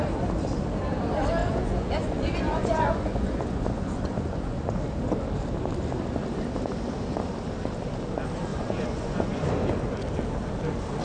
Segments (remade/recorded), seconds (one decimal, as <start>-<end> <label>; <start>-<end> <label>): 0.0-1.4 recorded; 1.4-4.8 remade; 4.8-8.5 recorded; 8.5-9.5 remade; 9.5-11.0 recorded